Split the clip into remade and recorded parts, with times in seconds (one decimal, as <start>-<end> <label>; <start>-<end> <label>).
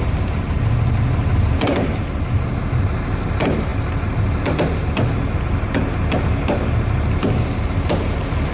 0.0-8.5 recorded